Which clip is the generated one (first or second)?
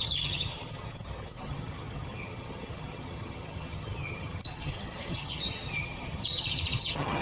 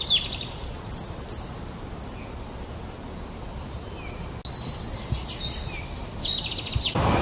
first